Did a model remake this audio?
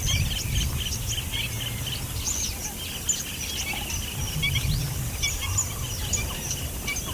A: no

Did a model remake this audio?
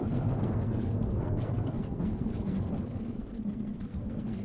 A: yes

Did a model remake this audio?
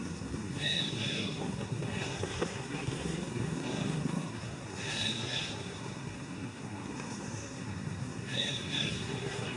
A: yes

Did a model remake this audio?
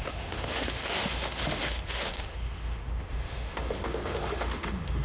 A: yes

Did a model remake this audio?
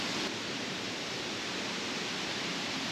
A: yes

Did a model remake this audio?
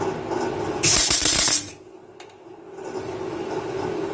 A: no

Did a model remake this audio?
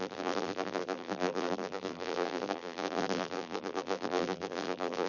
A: yes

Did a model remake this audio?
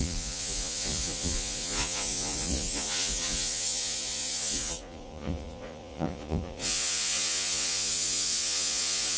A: yes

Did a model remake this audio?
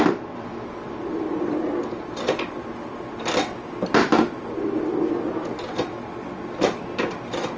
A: no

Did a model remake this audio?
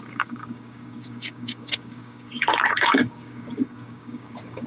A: yes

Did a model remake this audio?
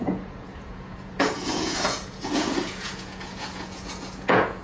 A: yes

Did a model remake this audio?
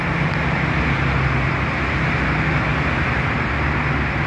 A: no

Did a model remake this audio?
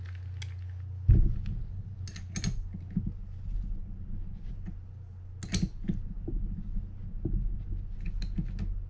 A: no